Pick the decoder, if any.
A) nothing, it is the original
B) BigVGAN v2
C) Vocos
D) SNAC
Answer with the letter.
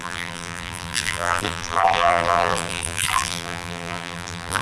B